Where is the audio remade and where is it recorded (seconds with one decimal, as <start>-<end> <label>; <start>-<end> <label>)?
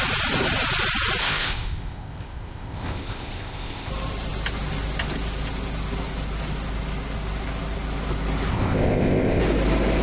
0.0-1.2 recorded; 1.2-3.9 remade; 3.9-8.5 recorded; 8.5-9.4 remade; 9.4-10.0 recorded